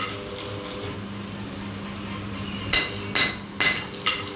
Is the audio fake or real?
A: real